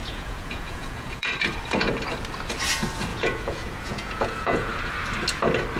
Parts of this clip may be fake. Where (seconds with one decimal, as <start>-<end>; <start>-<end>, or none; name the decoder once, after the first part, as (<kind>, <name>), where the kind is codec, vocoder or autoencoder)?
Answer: 0.0-1.3 (vocoder, Vocos); 3.1-4.7